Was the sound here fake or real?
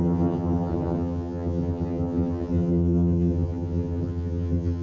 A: fake